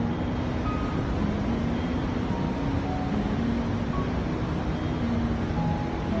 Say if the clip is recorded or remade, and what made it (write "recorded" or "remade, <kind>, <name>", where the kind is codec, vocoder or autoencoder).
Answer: recorded